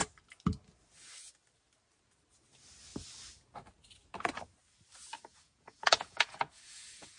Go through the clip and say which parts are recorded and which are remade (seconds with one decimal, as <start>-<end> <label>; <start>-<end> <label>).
0.0-5.3 recorded; 5.3-7.2 remade